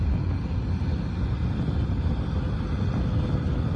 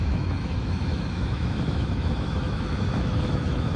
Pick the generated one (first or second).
second